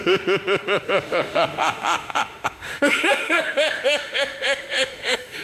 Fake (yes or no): yes